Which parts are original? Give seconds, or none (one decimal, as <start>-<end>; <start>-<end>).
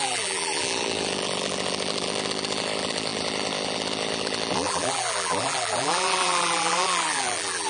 none